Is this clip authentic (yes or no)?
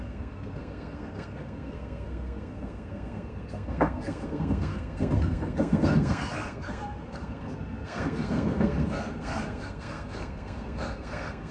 no